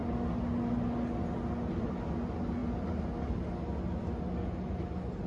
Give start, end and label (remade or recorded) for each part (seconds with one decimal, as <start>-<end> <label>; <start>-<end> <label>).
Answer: 0.0-5.3 recorded